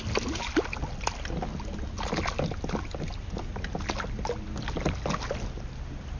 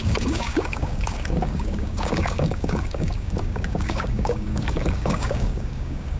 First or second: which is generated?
second